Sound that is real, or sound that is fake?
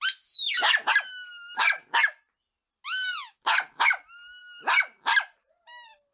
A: real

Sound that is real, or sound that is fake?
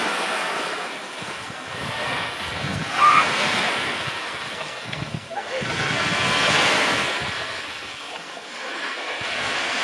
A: fake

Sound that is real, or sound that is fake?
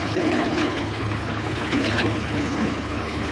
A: fake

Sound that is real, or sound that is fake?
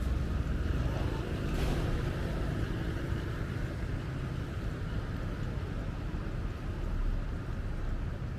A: real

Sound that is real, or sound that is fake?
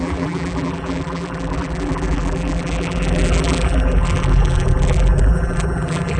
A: fake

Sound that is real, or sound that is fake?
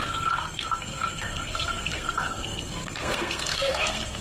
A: fake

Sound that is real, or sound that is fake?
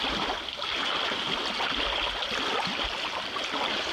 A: real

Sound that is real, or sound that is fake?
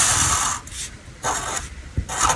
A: fake